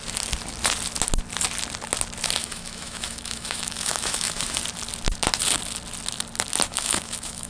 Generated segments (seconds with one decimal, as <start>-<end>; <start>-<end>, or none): 2.4-4.6; 6.7-7.5